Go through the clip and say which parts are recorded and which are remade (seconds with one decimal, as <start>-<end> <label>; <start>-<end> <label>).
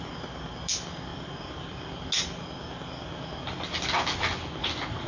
0.0-5.1 recorded